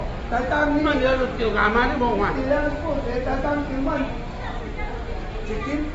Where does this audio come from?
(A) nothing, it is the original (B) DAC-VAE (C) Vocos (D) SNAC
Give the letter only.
A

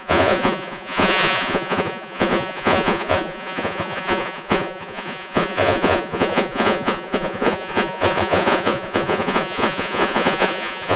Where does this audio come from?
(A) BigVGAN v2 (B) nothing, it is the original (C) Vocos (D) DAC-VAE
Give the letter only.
C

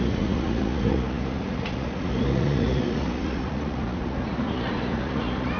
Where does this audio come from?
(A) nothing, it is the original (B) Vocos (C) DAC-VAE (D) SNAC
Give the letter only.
B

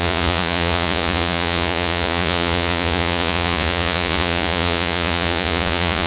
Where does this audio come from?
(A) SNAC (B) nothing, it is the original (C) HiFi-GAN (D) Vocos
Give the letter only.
D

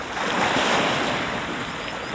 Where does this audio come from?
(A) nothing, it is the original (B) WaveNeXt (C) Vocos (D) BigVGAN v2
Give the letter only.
A